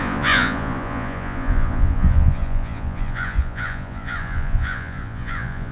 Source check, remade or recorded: remade